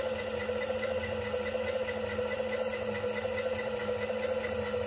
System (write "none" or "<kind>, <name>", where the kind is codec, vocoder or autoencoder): none